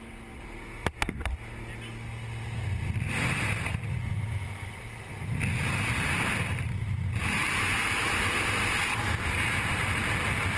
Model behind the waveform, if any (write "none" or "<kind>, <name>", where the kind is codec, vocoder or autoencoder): none